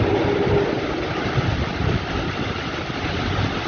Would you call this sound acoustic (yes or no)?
yes